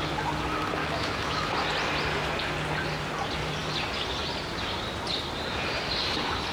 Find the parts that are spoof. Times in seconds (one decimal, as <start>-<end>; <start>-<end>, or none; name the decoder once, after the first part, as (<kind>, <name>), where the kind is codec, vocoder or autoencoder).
0.8-1.6 (autoencoder, DAC-VAE)